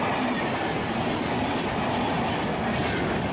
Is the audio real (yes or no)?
yes